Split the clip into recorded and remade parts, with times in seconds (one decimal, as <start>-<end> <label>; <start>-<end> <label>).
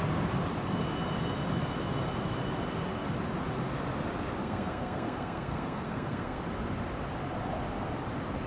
0.0-4.4 recorded; 4.4-6.4 remade; 6.4-8.5 recorded